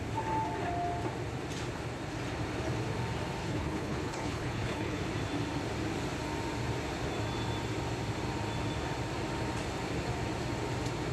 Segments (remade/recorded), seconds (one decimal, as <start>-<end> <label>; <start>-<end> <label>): 0.0-3.4 recorded; 3.4-5.0 remade; 5.0-11.1 recorded